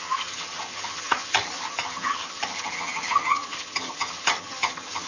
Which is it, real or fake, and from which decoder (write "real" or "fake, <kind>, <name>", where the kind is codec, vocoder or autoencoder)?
fake, vocoder, HiFi-GAN